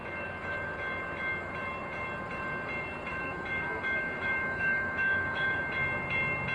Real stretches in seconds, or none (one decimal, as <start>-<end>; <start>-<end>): 0.0-3.1; 5.6-6.5